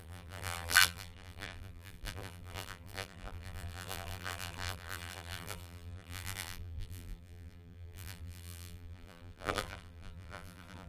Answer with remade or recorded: remade